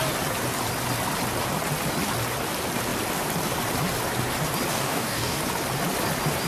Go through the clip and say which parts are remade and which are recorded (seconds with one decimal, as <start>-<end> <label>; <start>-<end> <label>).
0.0-4.7 recorded; 4.7-5.4 remade; 5.4-6.5 recorded